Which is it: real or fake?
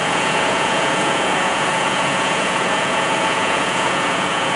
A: fake